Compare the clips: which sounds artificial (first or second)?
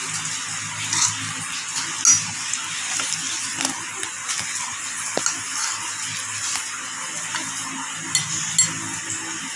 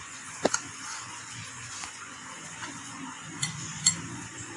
second